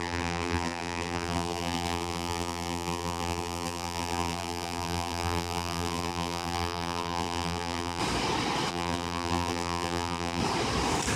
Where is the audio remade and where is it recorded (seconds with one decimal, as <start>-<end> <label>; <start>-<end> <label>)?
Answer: 0.0-8.0 remade; 8.0-8.7 recorded; 8.7-10.4 remade; 10.4-11.2 recorded

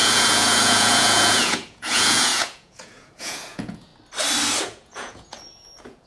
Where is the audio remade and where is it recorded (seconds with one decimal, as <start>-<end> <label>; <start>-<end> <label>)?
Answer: 0.0-3.9 remade; 3.9-4.6 recorded; 4.6-6.1 remade